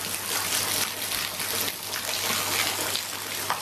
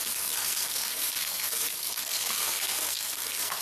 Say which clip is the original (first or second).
first